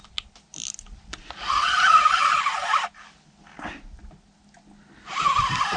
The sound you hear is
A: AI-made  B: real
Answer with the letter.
B